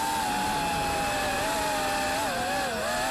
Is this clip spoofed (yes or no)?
no